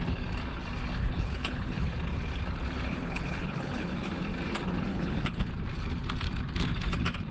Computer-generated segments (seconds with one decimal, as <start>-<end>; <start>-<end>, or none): 1.0-1.9; 2.9-4.1; 4.9-5.5